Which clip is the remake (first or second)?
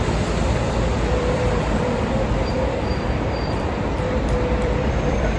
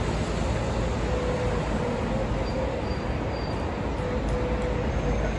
first